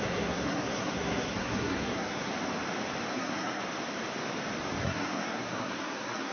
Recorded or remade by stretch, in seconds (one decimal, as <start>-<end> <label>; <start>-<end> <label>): 0.0-2.3 remade; 2.3-3.1 recorded; 3.1-3.6 remade; 3.6-4.8 recorded; 4.8-6.3 remade